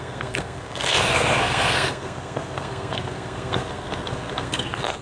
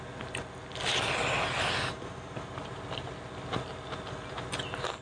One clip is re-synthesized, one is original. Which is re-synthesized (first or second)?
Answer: first